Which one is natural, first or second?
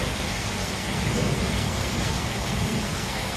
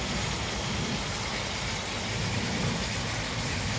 second